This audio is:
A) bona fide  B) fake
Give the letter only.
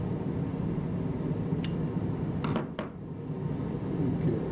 A